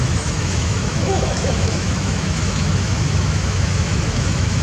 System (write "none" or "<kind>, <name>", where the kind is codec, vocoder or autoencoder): autoencoder, DAC-VAE